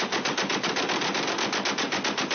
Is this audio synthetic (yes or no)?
no